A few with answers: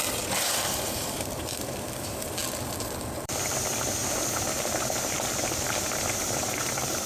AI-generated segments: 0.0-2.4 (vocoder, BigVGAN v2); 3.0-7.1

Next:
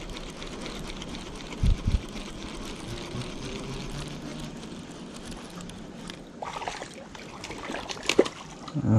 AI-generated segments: none

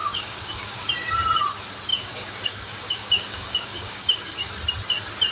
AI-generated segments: 0.0-0.9 (codec, DAC); 1.9-4.5

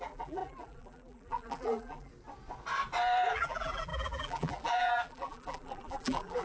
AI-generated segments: 0.0-2.1 (vocoder, BigVGAN v2); 3.3-6.4

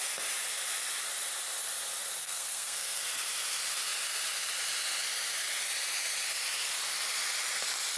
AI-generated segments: 2.2-3.0 (codec, SNAC)

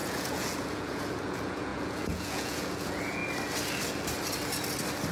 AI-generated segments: 0.0-3.2 (vocoder, Vocos)